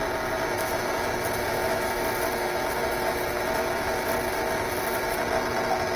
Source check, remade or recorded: recorded